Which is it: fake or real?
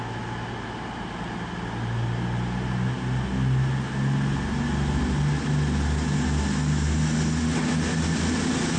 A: real